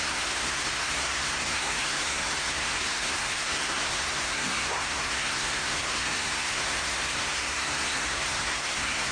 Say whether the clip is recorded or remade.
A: remade